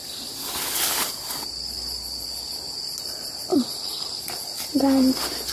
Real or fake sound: real